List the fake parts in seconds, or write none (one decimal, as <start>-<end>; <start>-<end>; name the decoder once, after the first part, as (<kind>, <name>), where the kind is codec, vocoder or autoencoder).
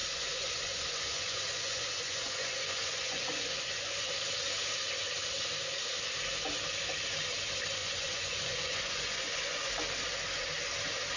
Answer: 0.0-4.1 (vocoder, Vocos); 7.8-9.7